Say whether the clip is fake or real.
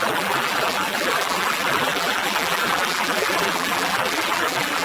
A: fake